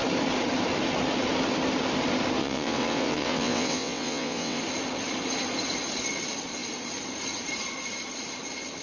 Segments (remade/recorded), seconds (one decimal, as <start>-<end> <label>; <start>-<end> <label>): 0.0-2.4 recorded; 2.4-4.6 remade; 4.6-8.8 recorded